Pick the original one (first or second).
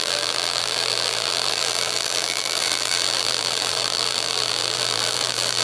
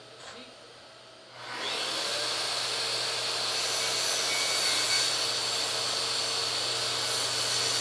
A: second